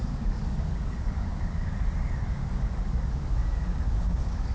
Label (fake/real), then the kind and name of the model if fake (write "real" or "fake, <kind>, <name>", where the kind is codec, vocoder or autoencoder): fake, codec, DAC